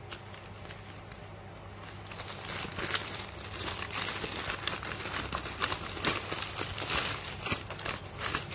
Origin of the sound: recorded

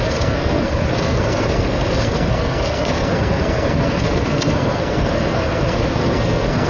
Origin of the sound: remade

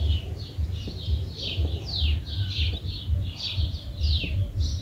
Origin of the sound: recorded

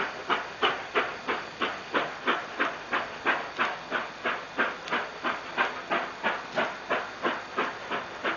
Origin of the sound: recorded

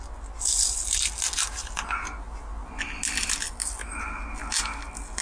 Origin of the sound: recorded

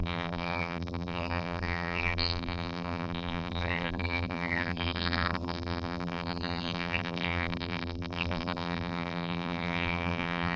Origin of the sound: remade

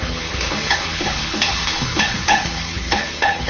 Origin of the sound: remade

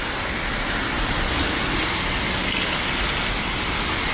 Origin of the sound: recorded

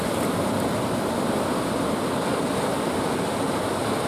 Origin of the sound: recorded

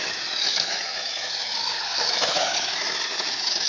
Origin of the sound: remade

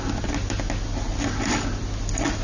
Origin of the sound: recorded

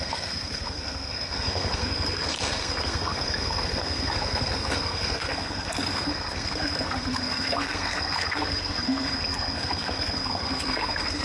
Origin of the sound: remade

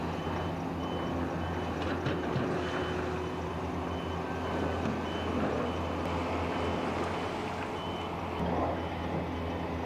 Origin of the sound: recorded